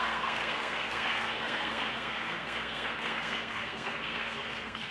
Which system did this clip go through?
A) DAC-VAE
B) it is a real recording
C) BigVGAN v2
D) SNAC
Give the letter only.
D